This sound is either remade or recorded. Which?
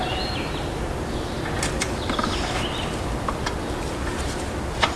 remade